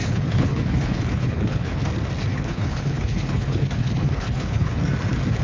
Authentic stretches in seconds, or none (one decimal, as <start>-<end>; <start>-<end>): 1.8-2.3; 4.8-5.4